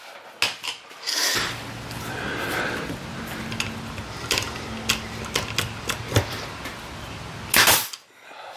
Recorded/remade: recorded